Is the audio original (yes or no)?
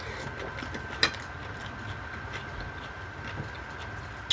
yes